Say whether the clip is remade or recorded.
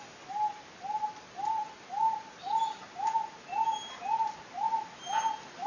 recorded